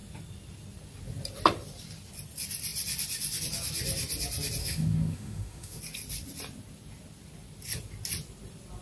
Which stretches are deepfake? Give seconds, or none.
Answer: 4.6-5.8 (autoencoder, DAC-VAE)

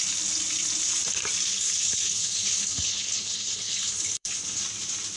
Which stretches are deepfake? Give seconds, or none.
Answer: 1.5-4.6 (codec, HILCodec)

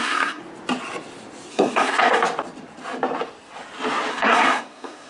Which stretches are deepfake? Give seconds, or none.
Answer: 0.0-0.4 (codec, SNAC); 1.5-2.2; 4.1-5.1

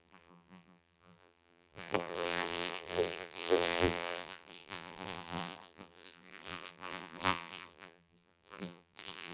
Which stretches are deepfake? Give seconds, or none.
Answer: 0.0-9.3 (vocoder, BigVGAN v2)

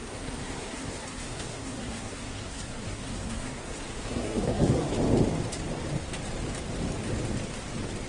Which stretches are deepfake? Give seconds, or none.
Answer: 0.0-4.9 (codec, SNAC)